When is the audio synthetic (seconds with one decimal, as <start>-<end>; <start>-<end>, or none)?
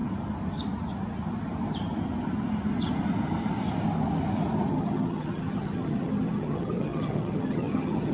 4.7-8.1